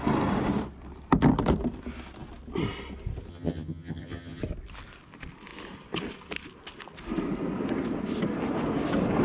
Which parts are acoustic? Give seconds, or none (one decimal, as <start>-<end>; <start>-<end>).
0.0-3.3; 4.4-9.2